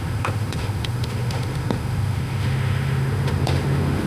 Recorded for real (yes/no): no